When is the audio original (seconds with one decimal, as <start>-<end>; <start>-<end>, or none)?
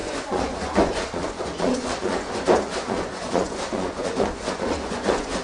none